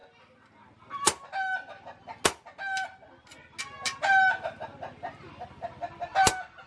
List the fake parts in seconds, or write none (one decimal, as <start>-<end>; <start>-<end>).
none